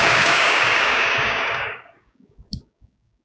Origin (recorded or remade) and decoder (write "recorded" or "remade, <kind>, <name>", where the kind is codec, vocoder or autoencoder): remade, codec, DAC